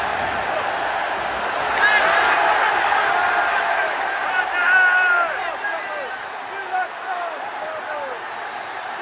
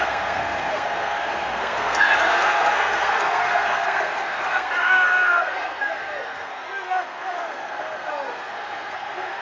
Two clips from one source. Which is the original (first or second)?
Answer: first